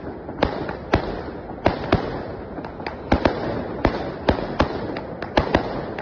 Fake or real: real